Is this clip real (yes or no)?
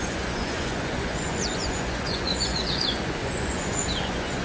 no